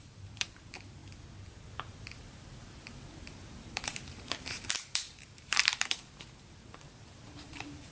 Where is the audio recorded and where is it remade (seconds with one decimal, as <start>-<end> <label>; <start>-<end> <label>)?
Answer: 0.0-1.0 remade; 1.0-3.4 recorded; 3.4-7.9 remade